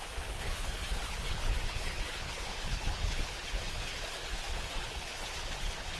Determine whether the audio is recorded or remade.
remade